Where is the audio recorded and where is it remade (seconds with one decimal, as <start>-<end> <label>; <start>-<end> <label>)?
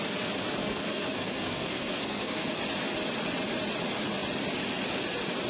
0.0-0.6 recorded; 0.6-2.6 remade; 2.6-5.5 recorded